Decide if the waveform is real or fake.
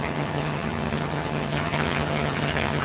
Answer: fake